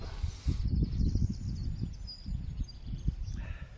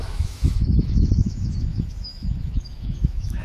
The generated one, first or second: second